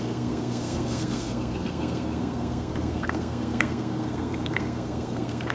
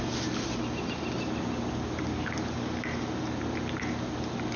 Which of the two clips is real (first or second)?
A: second